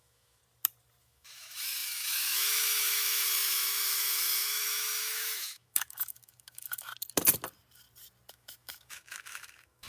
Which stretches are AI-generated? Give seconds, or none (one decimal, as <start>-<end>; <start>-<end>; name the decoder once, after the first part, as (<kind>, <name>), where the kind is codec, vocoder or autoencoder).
0.0-0.4 (autoencoder, DAC-VAE); 1.0-6.9; 8.3-9.9